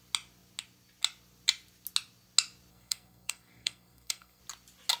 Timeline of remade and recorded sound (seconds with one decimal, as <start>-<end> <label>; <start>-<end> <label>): 0.0-2.7 recorded; 2.7-4.4 remade; 4.4-5.0 recorded